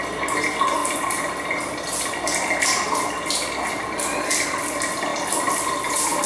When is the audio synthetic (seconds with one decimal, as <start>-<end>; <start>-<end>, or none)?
none